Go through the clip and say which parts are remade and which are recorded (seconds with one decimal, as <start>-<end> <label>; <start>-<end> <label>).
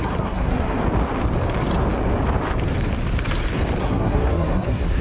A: 0.0-0.8 remade; 0.8-3.8 recorded; 3.8-5.0 remade